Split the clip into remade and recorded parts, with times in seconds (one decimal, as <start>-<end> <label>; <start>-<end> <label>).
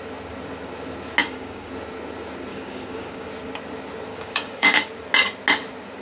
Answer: 0.0-1.2 recorded; 1.2-1.7 remade; 1.7-2.5 recorded; 2.5-3.3 remade; 3.3-4.1 recorded; 4.1-4.9 remade; 4.9-6.0 recorded